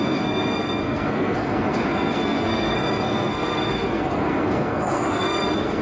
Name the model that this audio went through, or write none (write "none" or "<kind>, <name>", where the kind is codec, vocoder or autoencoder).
codec, SNAC